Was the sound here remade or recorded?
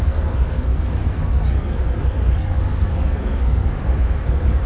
remade